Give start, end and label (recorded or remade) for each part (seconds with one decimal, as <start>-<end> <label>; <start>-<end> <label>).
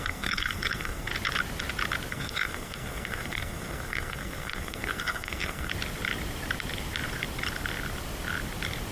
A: 0.0-1.1 remade; 1.1-2.1 recorded; 2.1-5.7 remade; 5.7-8.9 recorded